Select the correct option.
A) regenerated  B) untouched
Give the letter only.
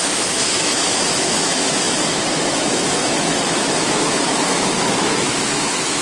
A